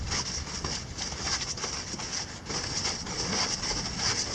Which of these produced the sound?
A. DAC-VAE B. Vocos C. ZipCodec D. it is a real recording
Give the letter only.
D